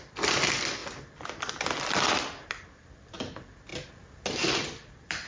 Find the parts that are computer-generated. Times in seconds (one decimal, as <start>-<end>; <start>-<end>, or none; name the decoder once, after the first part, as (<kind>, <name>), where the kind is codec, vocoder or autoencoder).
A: 0.0-0.8 (vocoder, BigVGAN v2); 2.2-3.7; 4.3-5.3